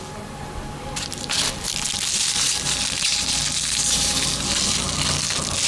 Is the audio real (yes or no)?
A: yes